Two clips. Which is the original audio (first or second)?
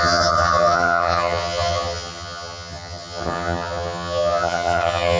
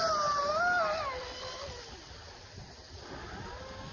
second